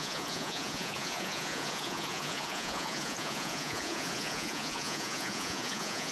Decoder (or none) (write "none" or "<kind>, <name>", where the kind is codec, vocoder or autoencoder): vocoder, Vocos